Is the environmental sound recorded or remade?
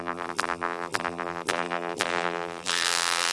remade